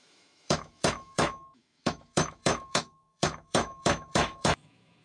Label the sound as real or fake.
fake